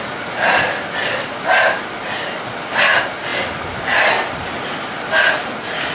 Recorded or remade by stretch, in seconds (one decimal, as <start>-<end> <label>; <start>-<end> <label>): 0.0-5.9 recorded